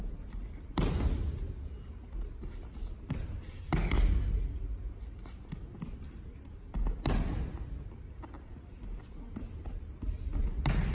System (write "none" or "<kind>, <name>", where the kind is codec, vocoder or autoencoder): none